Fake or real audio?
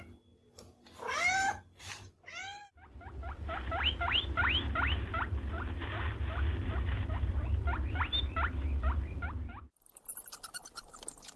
real